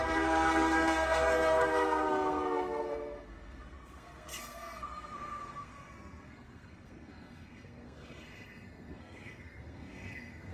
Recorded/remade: remade